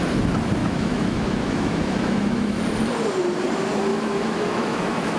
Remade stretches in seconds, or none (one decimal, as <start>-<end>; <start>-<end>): 0.6-2.6; 3.9-5.2